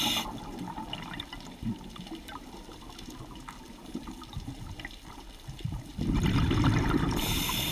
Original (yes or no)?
no